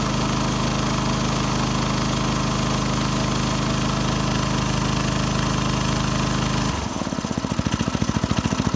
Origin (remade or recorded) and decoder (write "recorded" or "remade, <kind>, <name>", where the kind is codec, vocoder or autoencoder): recorded